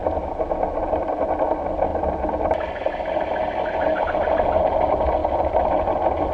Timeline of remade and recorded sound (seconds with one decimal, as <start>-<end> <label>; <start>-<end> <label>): 0.0-6.3 recorded